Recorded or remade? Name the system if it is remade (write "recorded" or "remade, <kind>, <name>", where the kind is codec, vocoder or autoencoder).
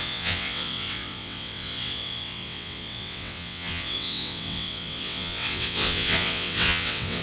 remade, vocoder, WaveNeXt